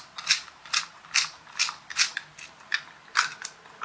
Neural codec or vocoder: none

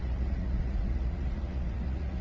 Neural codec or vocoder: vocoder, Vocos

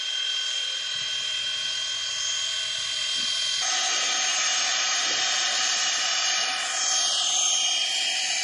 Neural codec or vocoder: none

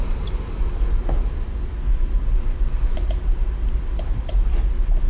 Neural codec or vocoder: none